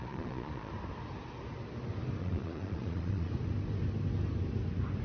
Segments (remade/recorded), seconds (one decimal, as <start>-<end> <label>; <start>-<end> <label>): 0.0-0.7 remade; 0.7-2.2 recorded; 2.2-3.3 remade; 3.3-5.0 recorded